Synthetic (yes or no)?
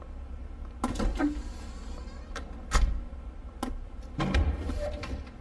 no